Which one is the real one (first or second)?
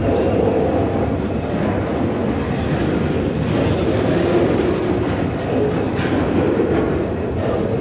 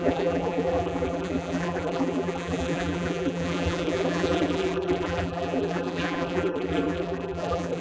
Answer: first